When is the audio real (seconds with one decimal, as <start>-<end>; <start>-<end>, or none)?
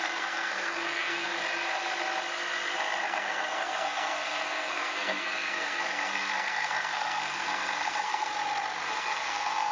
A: 1.3-3.0; 8.3-8.9